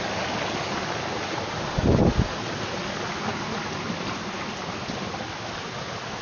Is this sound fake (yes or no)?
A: no